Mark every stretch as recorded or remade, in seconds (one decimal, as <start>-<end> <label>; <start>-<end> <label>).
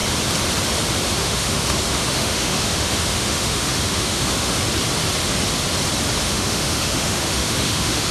0.0-1.2 recorded; 1.2-4.6 remade; 4.6-6.2 recorded; 6.2-8.1 remade